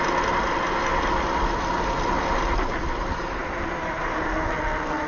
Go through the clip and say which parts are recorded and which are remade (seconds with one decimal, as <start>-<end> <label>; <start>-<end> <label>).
0.0-3.4 recorded; 3.4-4.3 remade; 4.3-5.1 recorded

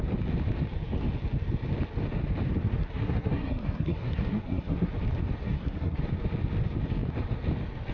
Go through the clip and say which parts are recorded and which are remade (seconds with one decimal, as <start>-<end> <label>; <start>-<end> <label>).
0.0-2.8 recorded; 2.8-4.9 remade; 4.9-5.4 recorded; 5.4-6.0 remade; 6.0-7.9 recorded

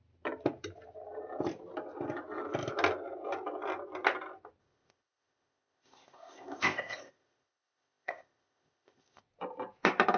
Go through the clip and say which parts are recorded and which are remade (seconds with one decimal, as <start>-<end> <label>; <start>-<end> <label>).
0.0-4.6 recorded; 4.6-9.2 remade; 9.2-10.2 recorded

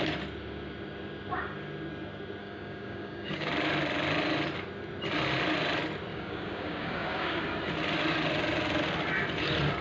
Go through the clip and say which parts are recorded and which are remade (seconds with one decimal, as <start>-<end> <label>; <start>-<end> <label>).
0.0-2.4 recorded; 2.4-3.5 remade; 3.5-6.1 recorded; 6.1-7.4 remade; 7.4-9.8 recorded

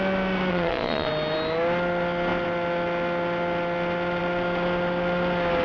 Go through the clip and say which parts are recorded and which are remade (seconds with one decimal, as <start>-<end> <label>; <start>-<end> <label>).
0.0-0.5 recorded; 0.5-1.1 remade; 1.1-5.6 recorded